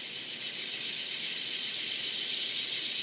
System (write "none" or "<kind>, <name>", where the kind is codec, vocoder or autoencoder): none